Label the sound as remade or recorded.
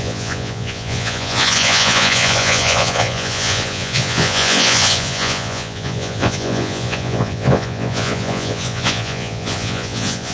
remade